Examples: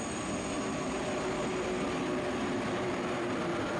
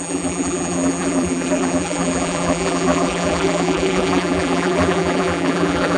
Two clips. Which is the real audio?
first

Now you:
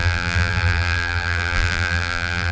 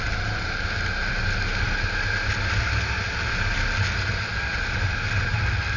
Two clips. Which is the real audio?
second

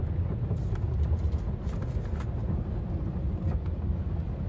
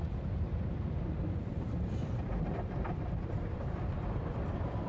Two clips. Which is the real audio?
first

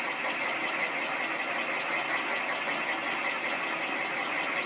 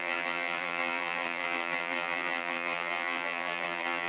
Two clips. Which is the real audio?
first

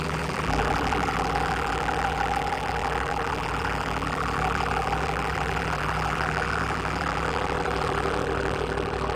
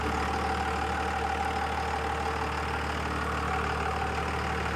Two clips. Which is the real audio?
second